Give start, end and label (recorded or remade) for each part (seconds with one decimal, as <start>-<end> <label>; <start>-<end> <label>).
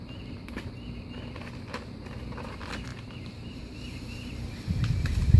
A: 0.0-2.9 recorded; 2.9-4.5 remade; 4.5-5.4 recorded